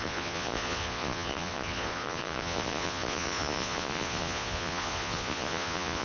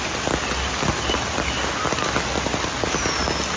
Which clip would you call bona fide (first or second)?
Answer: second